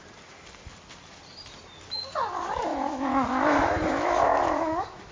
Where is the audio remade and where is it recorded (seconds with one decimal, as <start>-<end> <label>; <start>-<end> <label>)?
0.0-2.7 recorded; 2.7-5.1 remade